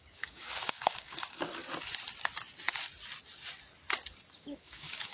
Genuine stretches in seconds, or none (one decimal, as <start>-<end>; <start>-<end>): 1.6-4.4